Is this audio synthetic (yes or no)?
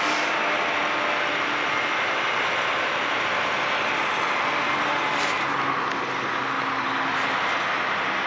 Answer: no